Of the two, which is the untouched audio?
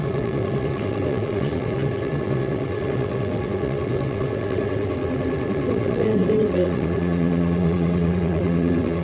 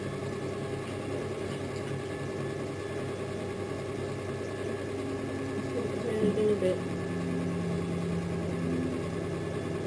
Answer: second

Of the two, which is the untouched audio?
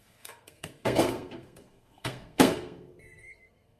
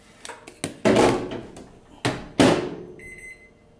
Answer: second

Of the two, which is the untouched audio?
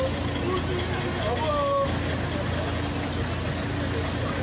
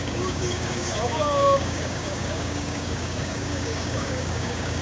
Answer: first